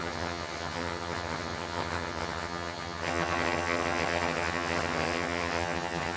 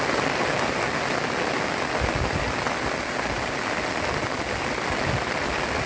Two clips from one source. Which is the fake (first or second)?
first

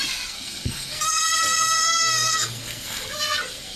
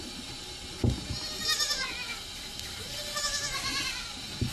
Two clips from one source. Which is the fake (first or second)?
first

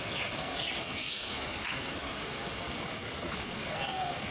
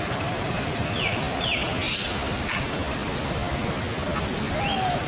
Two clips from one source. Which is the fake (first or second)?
first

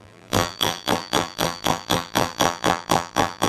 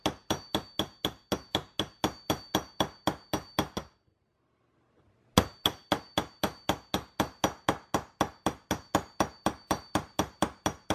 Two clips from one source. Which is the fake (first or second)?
first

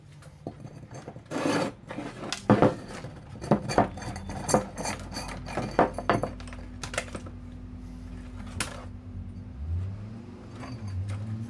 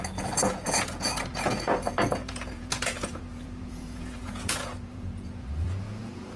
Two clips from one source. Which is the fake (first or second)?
second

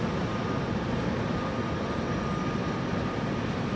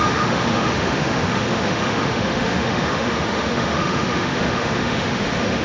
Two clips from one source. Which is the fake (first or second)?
second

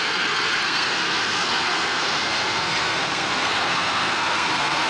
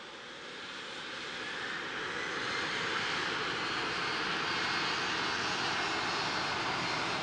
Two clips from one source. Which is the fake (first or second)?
first